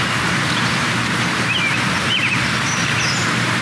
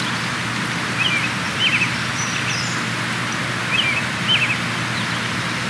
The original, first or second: second